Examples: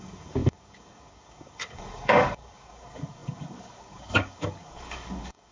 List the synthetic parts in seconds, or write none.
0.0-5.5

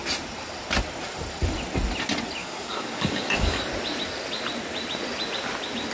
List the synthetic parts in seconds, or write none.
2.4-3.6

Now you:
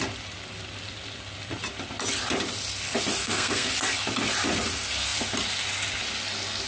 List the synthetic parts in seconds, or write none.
3.2-3.7